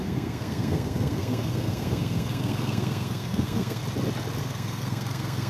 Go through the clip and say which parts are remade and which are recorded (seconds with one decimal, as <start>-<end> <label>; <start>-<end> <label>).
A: 0.0-3.8 remade; 3.8-4.4 recorded; 4.4-5.5 remade